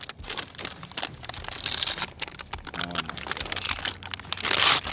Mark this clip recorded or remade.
recorded